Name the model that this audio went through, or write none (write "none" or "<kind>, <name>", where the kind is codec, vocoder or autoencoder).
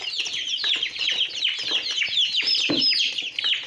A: none